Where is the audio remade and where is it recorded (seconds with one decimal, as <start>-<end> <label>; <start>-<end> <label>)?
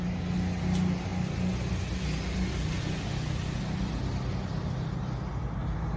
0.0-6.0 recorded